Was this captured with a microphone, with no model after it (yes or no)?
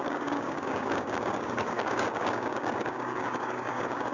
no